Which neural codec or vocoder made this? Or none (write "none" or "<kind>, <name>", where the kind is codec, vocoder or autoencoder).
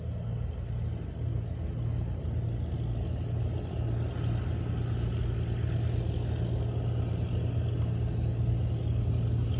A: none